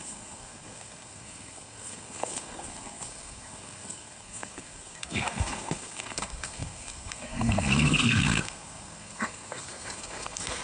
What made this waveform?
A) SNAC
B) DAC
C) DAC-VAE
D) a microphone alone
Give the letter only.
A